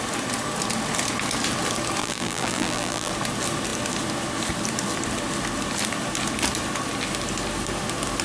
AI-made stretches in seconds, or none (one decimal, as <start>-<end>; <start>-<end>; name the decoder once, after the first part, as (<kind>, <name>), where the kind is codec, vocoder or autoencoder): 2.0-3.1 (vocoder, BigVGAN v2)